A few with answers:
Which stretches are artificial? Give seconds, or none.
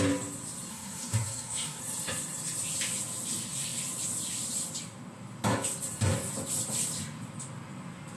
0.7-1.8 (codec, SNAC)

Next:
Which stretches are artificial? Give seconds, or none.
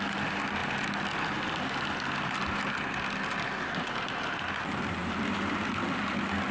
none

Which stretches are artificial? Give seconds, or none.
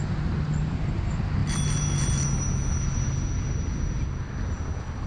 none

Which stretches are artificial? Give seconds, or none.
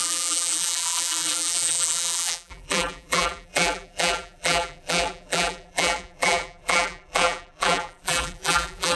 0.0-9.0 (vocoder, BigVGAN v2)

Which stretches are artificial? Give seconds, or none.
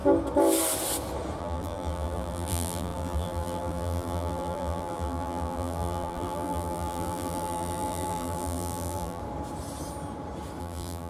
1.4-9.2 (vocoder, BigVGAN v2); 10.6-11.1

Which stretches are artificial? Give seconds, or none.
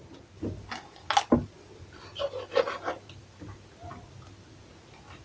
none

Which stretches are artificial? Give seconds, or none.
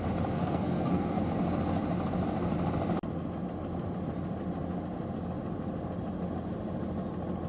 0.4-1.2 (codec, SNAC)